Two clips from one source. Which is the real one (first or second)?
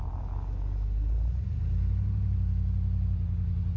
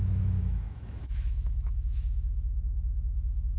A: first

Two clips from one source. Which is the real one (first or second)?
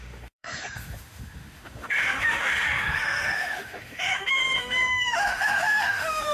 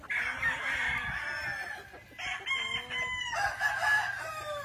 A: second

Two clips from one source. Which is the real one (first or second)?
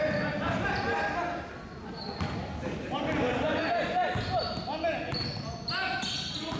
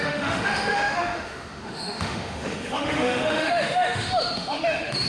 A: first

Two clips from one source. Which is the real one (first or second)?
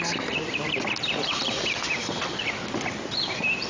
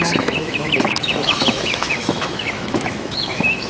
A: first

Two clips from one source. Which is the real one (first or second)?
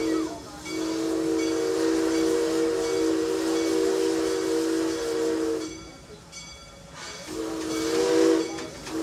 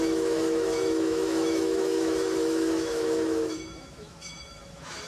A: first